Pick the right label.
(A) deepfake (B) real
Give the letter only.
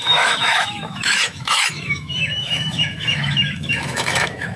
A